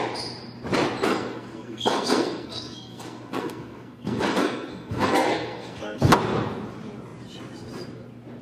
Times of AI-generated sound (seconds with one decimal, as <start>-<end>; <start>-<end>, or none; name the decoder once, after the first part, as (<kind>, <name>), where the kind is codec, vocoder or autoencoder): 1.1-6.1 (codec, SNAC)